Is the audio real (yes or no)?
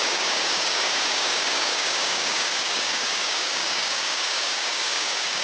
no